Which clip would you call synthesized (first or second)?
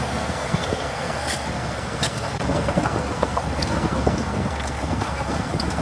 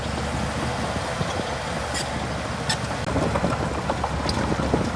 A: first